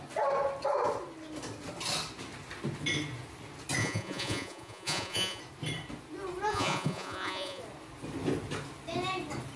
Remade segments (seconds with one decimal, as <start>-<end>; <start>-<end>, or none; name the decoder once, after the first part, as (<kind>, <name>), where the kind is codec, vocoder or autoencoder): 3.8-5.4 (vocoder, Vocos); 6.5-7.6

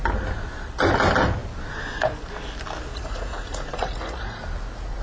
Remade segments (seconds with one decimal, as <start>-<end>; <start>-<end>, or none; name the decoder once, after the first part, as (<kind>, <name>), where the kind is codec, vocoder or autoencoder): 2.9-4.4 (vocoder, Vocos)

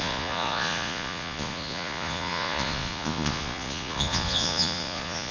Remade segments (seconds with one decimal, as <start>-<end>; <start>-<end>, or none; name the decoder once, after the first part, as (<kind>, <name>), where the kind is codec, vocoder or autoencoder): 0.0-5.3 (vocoder, Vocos)

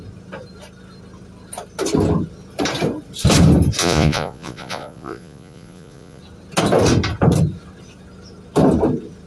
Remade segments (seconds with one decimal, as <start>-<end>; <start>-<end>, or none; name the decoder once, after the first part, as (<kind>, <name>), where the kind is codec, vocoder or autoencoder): 3.8-6.2 (vocoder, Vocos)

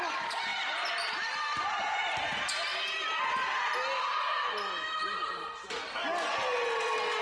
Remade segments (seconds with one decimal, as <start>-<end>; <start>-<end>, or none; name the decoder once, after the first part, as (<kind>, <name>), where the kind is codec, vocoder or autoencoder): none

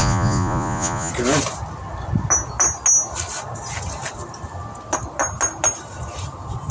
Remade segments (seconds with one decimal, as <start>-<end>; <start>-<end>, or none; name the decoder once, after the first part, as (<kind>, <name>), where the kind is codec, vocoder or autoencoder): 0.0-1.1 (vocoder, Vocos)

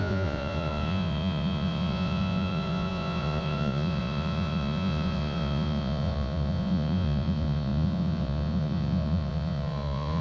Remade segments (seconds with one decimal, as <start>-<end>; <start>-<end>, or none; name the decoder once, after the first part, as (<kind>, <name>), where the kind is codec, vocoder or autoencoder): 0.0-10.2 (vocoder, Vocos)

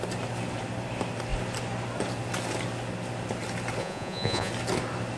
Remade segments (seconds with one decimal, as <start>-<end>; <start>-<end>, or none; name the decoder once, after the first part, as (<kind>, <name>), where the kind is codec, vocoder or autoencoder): 3.8-4.5 (vocoder, Vocos)